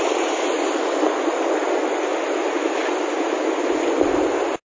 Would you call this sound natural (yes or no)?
yes